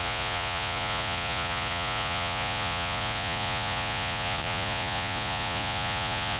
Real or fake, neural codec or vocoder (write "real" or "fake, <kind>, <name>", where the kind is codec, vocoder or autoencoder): fake, vocoder, Vocos